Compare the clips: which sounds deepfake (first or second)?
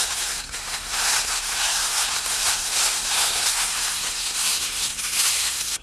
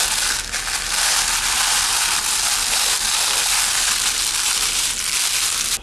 first